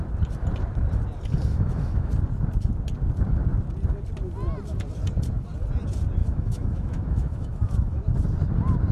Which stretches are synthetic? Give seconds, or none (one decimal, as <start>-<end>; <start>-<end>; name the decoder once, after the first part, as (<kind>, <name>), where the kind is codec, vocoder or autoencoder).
1.5-2.1 (autoencoder, DAC-VAE); 6.2-8.1